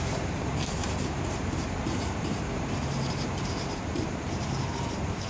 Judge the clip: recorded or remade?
remade